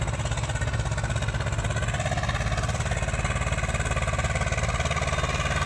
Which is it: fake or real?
real